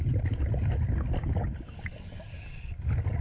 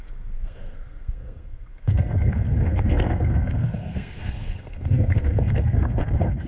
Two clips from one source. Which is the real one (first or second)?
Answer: first